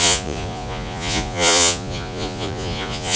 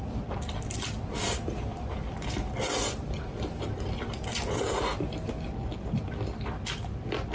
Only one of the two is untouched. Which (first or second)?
second